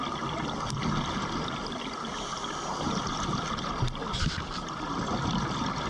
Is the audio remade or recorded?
recorded